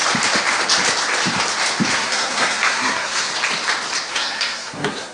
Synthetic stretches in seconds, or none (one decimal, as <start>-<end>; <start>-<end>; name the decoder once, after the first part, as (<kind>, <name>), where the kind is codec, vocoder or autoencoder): 1.9-3.3 (codec, SNAC); 4.1-5.1